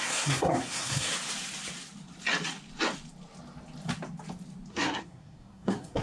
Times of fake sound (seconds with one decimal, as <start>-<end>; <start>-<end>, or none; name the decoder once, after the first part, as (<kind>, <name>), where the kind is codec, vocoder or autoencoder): 0.0-1.1 (codec, SNAC); 4.7-6.0